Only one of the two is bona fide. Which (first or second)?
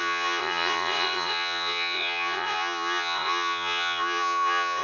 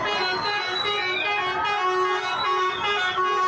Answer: second